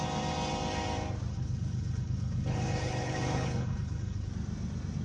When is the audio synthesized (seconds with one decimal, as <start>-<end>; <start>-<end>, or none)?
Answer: 1.3-4.3